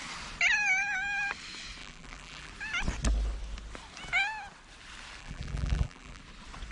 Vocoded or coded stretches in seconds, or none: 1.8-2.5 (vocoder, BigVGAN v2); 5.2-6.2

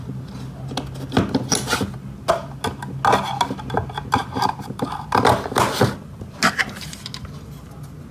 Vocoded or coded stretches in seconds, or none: 4.2-4.9 (vocoder, BigVGAN v2)

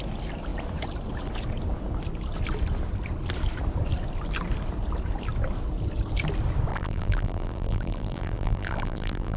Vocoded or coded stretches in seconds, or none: 6.7-9.4 (vocoder, BigVGAN v2)

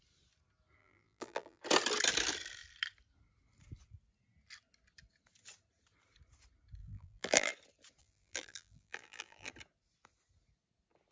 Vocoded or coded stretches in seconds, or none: 0.8-1.6 (vocoder, BigVGAN v2); 6.8-7.5; 8.0-9.5